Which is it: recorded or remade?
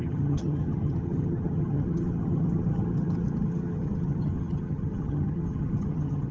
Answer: remade